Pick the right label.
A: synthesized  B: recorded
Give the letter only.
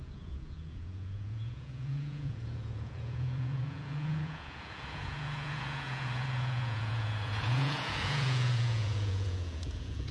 A